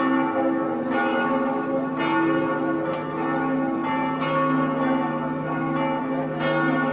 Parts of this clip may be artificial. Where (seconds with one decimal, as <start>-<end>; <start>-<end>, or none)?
1.1-2.0